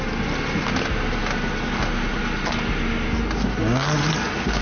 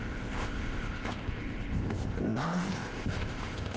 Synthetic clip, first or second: second